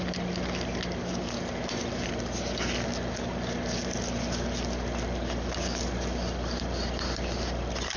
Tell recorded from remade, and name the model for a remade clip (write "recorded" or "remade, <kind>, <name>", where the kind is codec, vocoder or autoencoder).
recorded